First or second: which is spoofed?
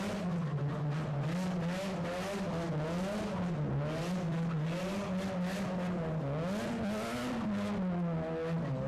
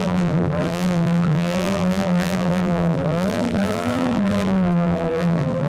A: second